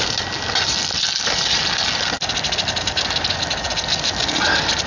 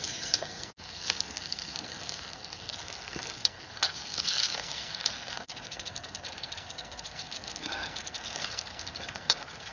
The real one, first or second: first